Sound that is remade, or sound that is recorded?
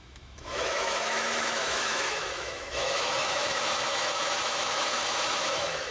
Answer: remade